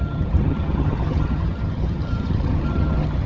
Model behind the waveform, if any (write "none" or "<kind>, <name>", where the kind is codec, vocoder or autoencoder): vocoder, HiFi-GAN